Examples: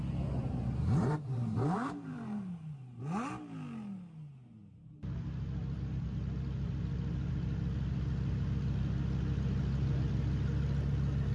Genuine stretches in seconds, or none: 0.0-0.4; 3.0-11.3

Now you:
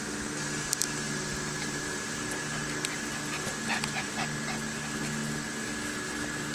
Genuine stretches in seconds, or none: 0.0-6.5